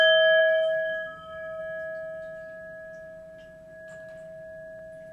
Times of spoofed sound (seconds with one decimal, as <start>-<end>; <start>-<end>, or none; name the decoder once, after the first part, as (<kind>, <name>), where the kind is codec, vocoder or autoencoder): 0.4-1.6 (autoencoder, DAC-VAE)